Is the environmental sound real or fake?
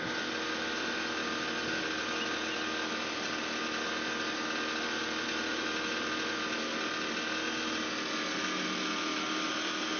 real